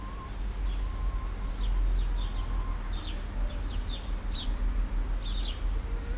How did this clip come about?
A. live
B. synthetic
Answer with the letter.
A